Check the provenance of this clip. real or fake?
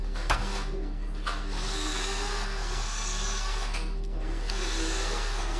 fake